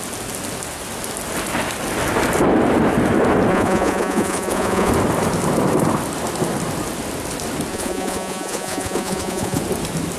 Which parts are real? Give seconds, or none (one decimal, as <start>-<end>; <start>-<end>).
0.0-3.5; 4.9-7.7; 9.6-10.2